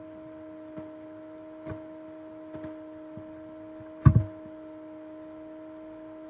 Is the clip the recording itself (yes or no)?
yes